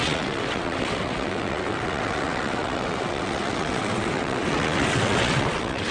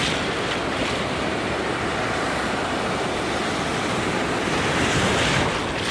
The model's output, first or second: first